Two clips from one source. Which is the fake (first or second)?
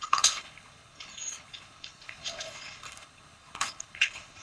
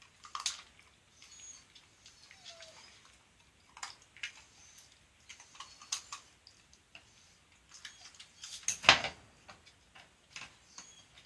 first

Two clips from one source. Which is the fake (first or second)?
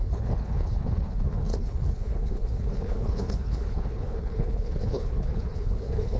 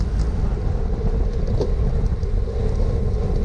first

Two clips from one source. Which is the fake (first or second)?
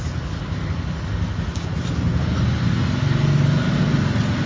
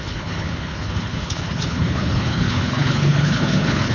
second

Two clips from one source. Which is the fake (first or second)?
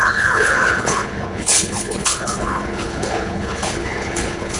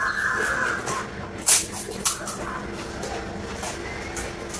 first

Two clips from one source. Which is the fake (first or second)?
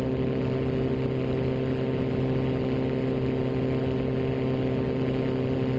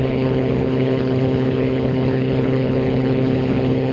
second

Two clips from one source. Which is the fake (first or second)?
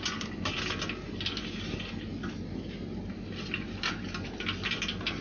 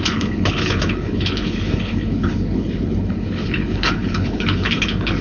second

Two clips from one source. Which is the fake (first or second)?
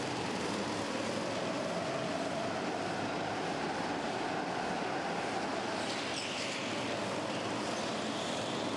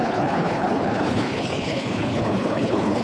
second